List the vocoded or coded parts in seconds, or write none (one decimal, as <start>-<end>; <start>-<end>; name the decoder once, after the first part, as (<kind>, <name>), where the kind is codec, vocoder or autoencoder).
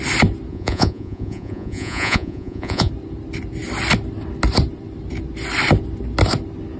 0.5-2.9 (vocoder, Vocos)